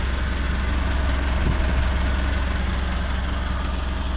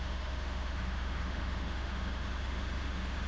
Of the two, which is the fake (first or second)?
second